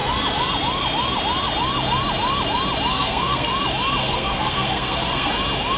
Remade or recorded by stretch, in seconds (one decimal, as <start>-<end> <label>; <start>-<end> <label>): 0.0-2.9 recorded; 2.9-3.5 remade; 3.5-4.0 recorded; 4.0-5.3 remade; 5.3-5.8 recorded